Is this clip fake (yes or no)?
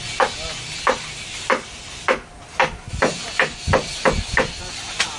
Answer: no